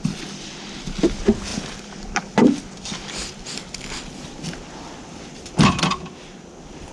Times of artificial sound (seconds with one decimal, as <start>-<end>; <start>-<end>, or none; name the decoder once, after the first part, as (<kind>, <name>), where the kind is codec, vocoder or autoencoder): 1.5-3.8 (vocoder, BigVGAN v2)